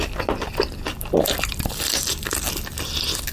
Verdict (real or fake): real